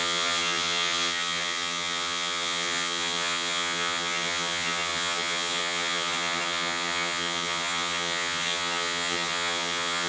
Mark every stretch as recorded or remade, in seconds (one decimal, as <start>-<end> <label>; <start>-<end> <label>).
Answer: 0.0-10.1 remade